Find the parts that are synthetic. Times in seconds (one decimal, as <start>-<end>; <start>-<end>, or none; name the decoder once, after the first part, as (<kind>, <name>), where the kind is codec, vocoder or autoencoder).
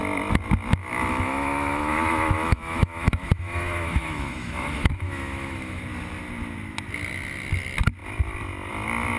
0.8-5.8 (autoencoder, DAC-VAE)